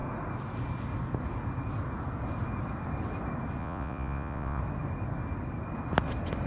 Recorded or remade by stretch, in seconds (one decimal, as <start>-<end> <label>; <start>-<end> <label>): 0.0-3.6 recorded; 3.6-4.6 remade; 4.6-6.5 recorded